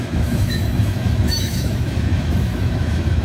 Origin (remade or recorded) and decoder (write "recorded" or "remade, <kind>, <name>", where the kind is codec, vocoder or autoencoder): remade, autoencoder, DAC-VAE